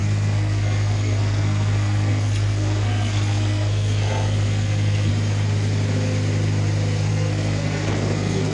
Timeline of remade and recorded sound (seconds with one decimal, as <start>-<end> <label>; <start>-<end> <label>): 0.0-5.1 remade; 5.1-7.1 recorded; 7.1-8.5 remade